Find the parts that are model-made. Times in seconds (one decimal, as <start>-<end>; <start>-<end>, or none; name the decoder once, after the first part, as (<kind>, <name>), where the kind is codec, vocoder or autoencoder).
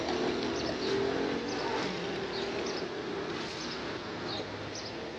none